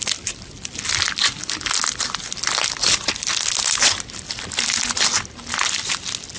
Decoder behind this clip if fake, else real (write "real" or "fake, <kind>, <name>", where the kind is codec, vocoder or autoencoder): real